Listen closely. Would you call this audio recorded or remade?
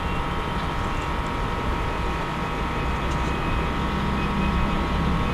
recorded